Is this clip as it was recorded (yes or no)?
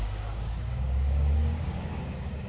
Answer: no